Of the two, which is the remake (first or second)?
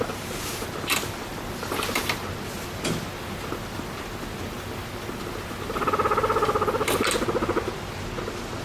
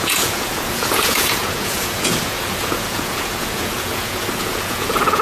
second